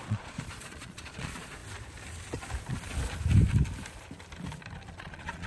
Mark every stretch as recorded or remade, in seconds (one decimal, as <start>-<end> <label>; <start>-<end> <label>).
0.0-1.6 remade; 1.6-4.9 recorded; 4.9-5.5 remade